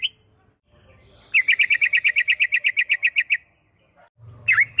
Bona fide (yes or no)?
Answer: yes